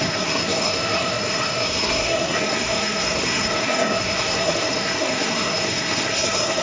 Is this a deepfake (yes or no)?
yes